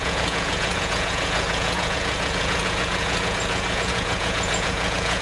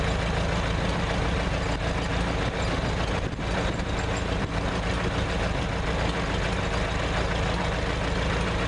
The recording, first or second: second